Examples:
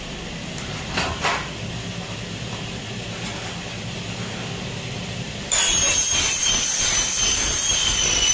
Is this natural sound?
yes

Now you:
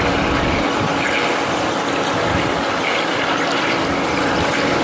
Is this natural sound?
yes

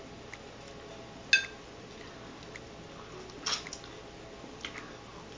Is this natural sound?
yes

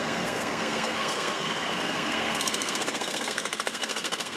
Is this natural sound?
no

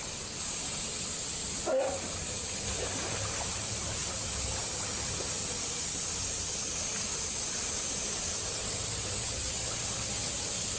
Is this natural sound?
yes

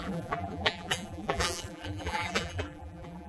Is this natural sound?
no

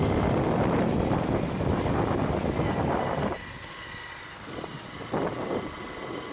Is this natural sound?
yes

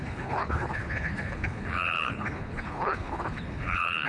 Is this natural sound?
no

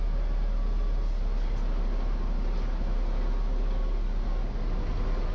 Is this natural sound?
yes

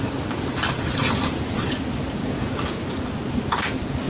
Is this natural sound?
yes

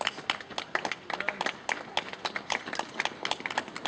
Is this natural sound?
yes